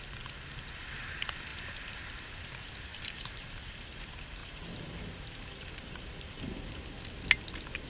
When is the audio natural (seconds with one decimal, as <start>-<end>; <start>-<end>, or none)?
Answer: 0.0-2.9; 4.0-4.4; 6.8-7.9